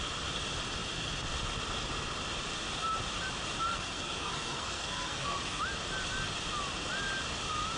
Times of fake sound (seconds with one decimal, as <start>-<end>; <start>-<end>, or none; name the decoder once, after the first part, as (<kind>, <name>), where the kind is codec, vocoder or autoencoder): 3.7-5.6 (codec, SNAC)